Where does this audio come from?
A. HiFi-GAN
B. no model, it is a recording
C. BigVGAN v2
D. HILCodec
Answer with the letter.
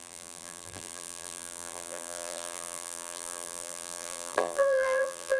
C